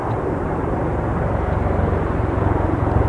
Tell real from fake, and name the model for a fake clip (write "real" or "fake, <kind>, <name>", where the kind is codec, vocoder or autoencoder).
fake, vocoder, BigVGAN v2